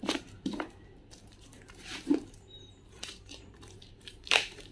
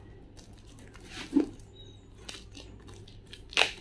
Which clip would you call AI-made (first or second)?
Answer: first